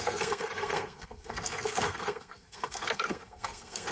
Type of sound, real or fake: fake